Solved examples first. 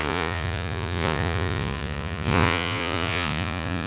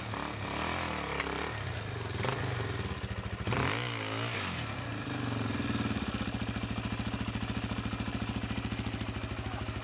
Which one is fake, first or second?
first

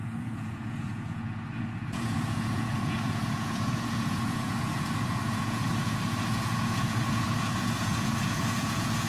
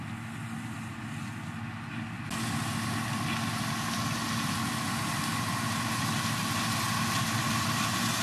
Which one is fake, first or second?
first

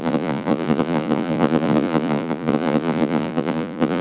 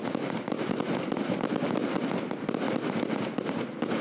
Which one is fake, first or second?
first